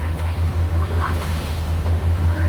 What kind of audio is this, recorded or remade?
remade